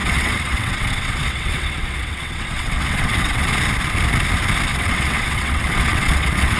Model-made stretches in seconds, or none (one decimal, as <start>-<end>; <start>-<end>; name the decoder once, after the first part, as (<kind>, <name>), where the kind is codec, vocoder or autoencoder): 0.0-3.5 (vocoder, WaveNeXt); 4.7-6.6